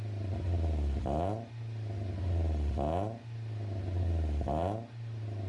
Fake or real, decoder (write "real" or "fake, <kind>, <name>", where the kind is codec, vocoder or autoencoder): real